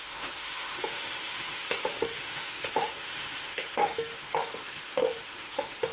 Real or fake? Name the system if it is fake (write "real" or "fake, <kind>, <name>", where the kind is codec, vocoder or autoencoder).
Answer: fake, autoencoder, DAC-VAE